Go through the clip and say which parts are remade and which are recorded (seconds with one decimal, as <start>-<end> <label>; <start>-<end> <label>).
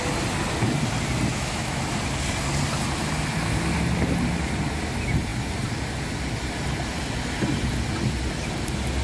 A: 0.0-1.3 recorded; 1.3-1.8 remade; 1.8-9.0 recorded